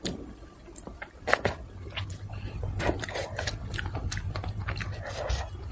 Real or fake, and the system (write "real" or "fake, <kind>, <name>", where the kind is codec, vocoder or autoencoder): real